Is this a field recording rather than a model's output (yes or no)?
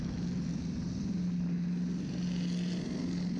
yes